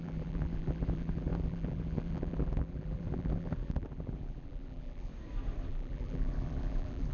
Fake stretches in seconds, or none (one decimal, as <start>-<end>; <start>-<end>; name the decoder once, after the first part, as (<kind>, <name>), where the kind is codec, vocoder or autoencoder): 0.0-5.1 (vocoder, BigVGAN v2); 5.7-7.1